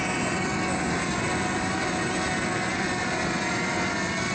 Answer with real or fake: real